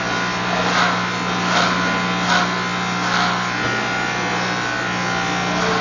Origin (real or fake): real